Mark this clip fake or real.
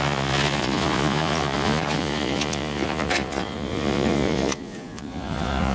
fake